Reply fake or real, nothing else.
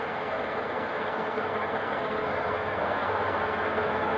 fake